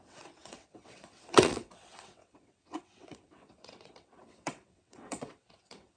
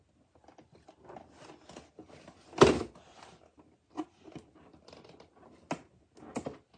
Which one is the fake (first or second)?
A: first